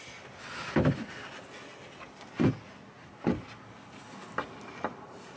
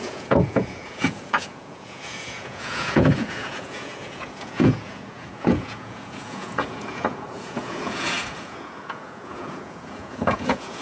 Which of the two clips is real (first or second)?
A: first